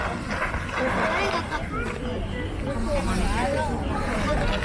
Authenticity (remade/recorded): recorded